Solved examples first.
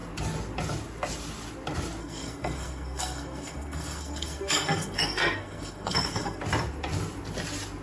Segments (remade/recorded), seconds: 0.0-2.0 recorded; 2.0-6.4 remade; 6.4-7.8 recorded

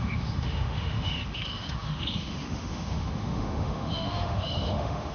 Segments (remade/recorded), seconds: 0.0-5.1 remade

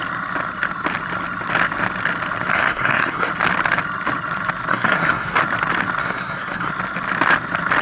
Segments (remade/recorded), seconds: 0.0-2.5 recorded; 2.5-3.3 remade; 3.3-4.7 recorded; 4.7-5.4 remade; 5.4-6.0 recorded; 6.0-6.7 remade; 6.7-7.8 recorded

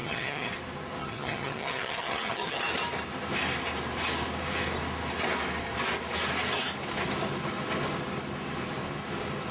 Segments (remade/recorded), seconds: 0.0-0.5 remade; 0.5-1.0 recorded; 1.0-2.6 remade; 2.6-9.5 recorded

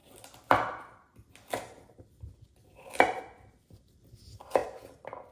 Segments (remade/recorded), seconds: 0.0-5.3 recorded

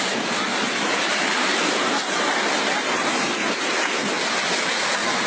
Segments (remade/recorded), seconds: 0.0-0.5 recorded; 0.5-3.7 remade; 3.7-5.3 recorded

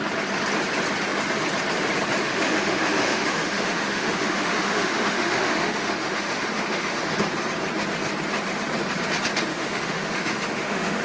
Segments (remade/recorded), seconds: 0.0-2.3 recorded; 2.3-7.1 remade; 7.1-9.5 recorded; 9.5-11.0 remade